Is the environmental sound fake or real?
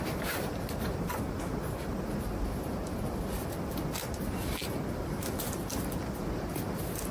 real